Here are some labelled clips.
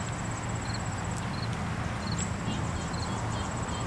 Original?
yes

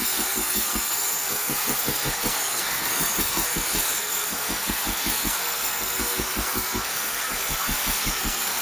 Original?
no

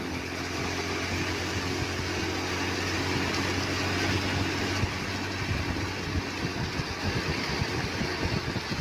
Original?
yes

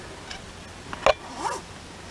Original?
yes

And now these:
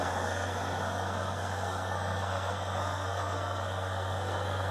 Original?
no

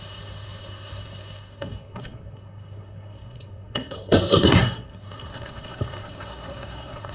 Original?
no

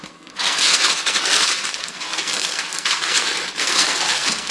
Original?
no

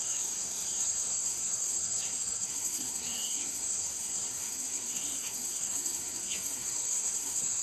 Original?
no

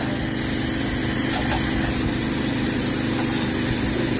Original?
yes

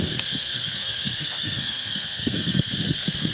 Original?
no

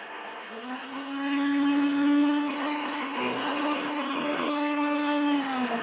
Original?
no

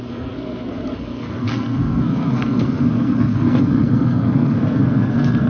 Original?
no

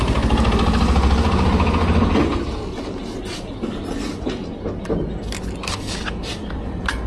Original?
yes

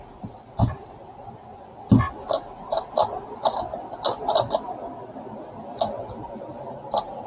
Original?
yes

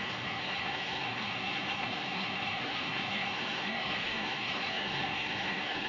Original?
no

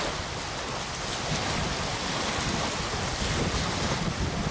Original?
yes